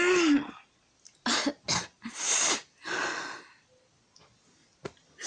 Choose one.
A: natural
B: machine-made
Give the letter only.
A